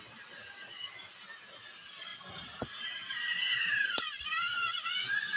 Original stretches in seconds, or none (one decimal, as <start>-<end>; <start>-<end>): 0.0-2.1; 4.0-5.4